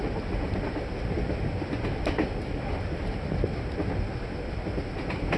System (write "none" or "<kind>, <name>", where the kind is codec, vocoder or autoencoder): none